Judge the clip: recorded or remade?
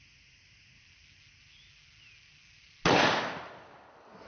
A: recorded